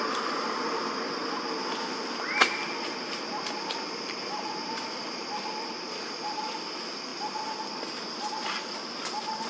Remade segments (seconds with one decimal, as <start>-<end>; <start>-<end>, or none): 0.0-1.2; 2.6-7.1; 8.3-9.5